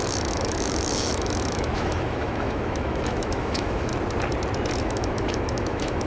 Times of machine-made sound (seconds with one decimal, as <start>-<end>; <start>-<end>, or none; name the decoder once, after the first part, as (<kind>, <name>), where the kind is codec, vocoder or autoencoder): 0.0-3.9 (autoencoder, DAC-VAE); 4.8-6.1